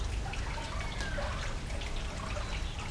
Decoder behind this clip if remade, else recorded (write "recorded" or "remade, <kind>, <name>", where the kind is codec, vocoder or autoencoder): recorded